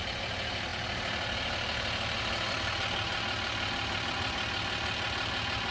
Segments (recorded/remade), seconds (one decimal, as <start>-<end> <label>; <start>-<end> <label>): 0.0-5.7 recorded